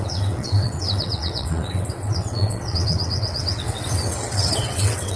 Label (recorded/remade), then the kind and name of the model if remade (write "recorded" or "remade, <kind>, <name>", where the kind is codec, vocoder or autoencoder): remade, vocoder, WaveNeXt